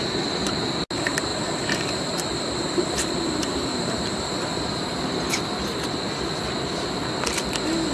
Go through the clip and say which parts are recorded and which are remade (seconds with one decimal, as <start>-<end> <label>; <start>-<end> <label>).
0.0-1.3 recorded; 1.3-5.3 remade; 5.3-7.9 recorded